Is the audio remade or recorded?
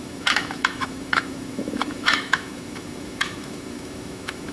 remade